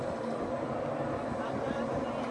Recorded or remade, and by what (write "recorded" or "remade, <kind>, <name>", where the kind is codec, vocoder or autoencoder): recorded